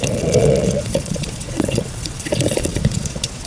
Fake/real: fake